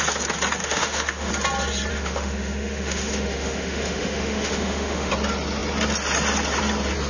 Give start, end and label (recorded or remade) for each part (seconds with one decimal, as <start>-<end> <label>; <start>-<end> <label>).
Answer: 0.0-0.6 recorded; 0.6-1.3 remade; 1.3-1.9 recorded; 1.9-5.1 remade; 5.1-7.1 recorded